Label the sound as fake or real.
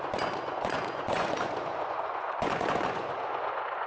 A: fake